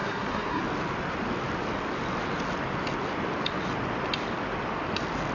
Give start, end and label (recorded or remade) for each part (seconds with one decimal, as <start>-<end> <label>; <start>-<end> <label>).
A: 0.0-0.6 remade; 0.6-5.3 recorded